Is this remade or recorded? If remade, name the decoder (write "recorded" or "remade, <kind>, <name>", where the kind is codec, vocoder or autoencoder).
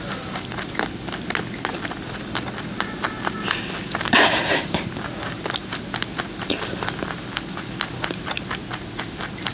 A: recorded